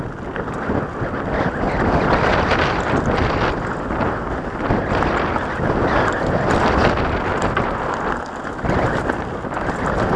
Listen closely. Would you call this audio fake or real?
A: real